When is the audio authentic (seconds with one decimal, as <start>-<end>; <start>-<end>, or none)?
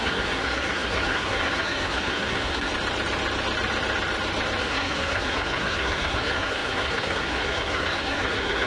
2.7-4.6